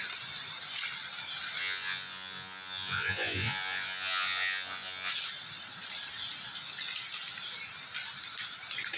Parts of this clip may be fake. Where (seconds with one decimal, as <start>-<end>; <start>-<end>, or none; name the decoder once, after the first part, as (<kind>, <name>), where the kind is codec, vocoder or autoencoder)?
1.6-5.1 (vocoder, Vocos)